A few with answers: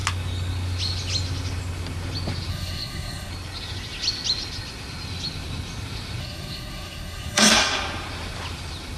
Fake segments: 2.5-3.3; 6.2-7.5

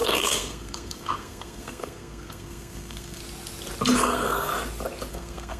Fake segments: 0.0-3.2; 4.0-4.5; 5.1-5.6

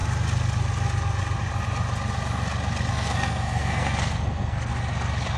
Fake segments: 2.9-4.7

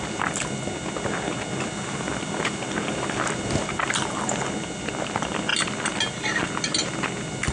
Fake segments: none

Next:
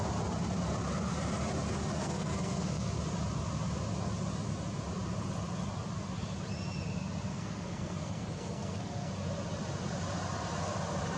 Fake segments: 2.0-2.9; 7.3-9.1

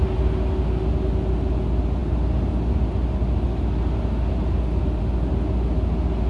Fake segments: none